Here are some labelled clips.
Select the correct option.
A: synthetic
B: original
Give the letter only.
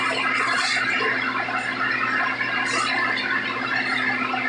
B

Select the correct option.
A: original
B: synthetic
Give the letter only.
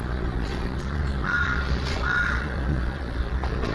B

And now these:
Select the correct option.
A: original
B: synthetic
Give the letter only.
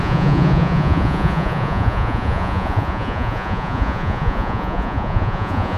B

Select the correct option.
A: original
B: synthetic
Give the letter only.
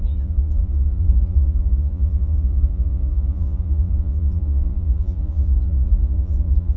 B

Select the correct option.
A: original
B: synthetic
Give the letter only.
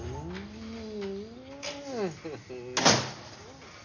A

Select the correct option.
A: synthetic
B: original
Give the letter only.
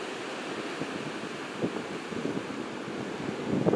B